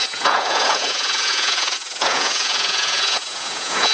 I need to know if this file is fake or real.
fake